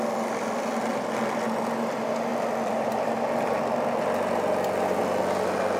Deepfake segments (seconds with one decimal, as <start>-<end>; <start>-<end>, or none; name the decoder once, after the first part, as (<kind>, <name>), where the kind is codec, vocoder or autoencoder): 0.9-1.6 (vocoder, BigVGAN v2); 2.3-5.0

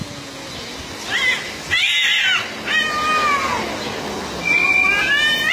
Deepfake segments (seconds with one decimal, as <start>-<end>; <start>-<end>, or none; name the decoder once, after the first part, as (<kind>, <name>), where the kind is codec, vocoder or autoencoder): none

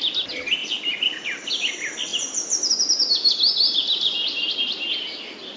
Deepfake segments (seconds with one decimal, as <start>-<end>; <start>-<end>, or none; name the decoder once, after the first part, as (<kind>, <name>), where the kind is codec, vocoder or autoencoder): none

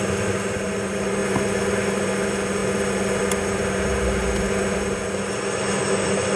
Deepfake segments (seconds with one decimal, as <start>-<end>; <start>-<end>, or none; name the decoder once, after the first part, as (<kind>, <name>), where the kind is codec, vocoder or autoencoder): none

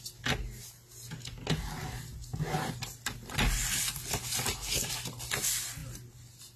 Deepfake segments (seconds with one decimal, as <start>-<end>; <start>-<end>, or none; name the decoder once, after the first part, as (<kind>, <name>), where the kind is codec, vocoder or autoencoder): none

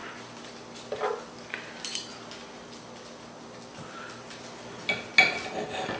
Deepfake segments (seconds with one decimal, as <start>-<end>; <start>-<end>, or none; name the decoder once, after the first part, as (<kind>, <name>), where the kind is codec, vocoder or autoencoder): 0.0-2.2 (vocoder, BigVGAN v2); 3.7-4.3

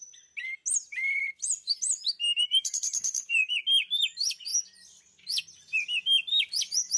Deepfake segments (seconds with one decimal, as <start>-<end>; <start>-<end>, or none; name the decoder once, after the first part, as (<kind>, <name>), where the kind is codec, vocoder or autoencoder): 2.2-3.5 (vocoder, BigVGAN v2)